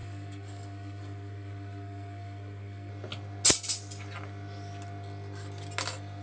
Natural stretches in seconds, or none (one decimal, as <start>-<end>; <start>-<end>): 2.9-6.2